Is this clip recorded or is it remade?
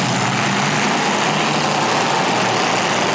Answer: recorded